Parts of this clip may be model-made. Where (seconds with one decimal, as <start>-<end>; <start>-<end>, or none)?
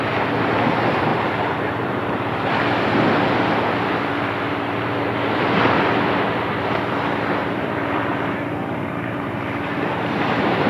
1.1-2.5; 7.4-10.7